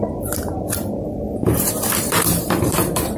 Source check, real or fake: fake